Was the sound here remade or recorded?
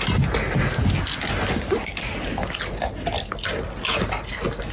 recorded